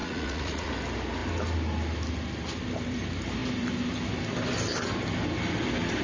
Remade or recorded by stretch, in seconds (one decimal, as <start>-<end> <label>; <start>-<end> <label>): 0.0-0.7 remade; 0.7-6.0 recorded